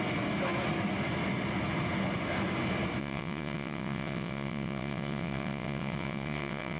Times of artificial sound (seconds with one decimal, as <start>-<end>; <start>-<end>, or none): 3.0-6.8